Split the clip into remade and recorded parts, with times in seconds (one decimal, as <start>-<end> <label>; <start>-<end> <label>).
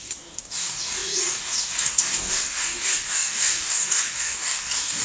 0.0-5.0 remade